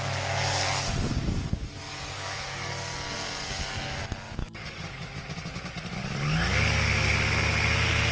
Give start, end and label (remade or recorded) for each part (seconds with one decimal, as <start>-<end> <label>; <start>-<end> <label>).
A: 0.0-2.1 recorded; 2.1-2.7 remade; 2.7-4.4 recorded; 4.4-5.1 remade; 5.1-8.1 recorded